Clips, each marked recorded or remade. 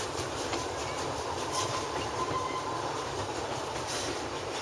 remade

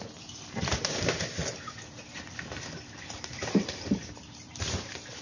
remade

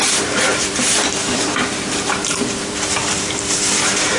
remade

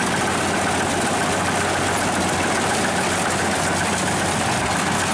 recorded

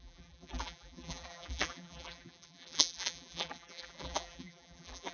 remade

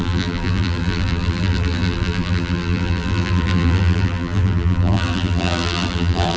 remade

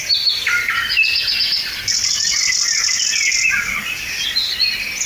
recorded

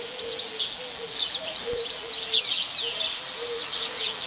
remade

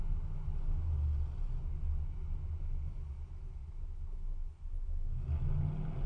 recorded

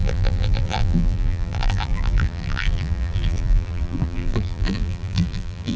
remade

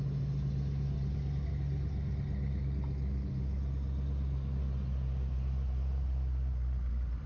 recorded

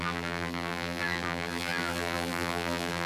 remade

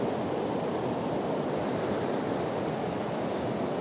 recorded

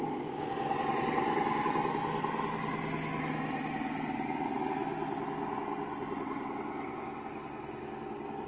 recorded